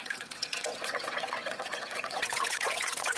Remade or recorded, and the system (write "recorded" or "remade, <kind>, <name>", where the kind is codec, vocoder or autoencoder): remade, vocoder, WaveNeXt